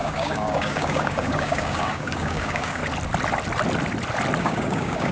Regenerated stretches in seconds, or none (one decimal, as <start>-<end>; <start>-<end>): 0.0-2.8; 4.4-5.1